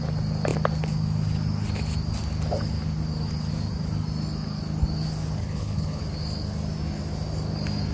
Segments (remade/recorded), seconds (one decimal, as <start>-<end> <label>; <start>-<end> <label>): 0.0-5.4 recorded; 5.4-6.0 remade; 6.0-7.9 recorded